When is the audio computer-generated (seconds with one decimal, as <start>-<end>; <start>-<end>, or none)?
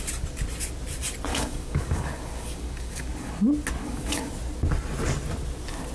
1.3-3.3; 3.8-4.3